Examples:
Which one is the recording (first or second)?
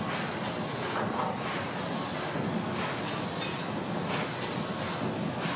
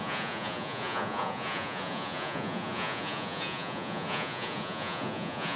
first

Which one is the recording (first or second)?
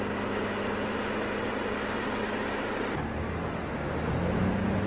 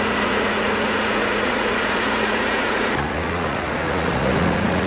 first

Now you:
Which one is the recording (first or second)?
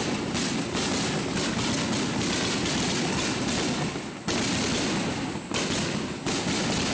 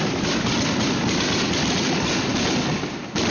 first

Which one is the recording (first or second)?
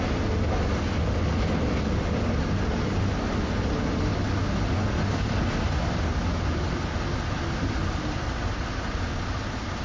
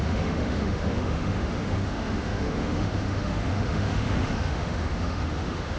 first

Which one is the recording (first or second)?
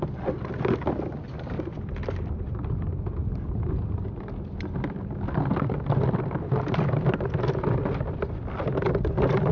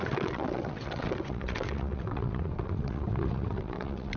first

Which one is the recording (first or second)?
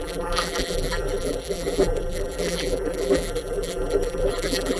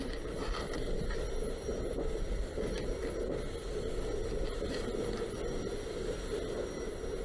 second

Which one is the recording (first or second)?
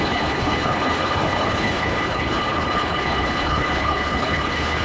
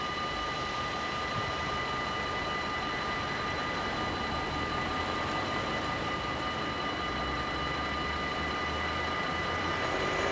second